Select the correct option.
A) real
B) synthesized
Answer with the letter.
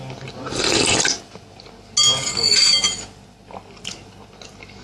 A